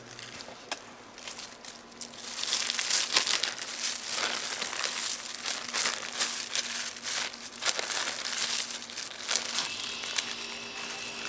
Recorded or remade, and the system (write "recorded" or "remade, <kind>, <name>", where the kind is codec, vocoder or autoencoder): recorded